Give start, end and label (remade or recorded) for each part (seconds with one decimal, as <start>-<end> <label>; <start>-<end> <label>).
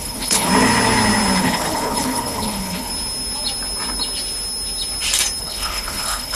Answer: 0.0-0.5 remade; 0.5-1.4 recorded; 1.4-2.9 remade; 2.9-5.4 recorded; 5.4-6.4 remade